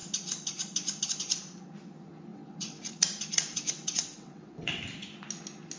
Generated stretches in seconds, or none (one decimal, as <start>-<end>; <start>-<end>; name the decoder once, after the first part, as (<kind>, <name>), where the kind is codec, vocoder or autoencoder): 2.3-2.9 (vocoder, WaveNeXt); 3.5-4.7